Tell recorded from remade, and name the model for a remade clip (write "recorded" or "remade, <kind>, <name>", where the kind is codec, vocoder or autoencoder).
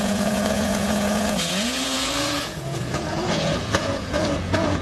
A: remade, vocoder, Vocos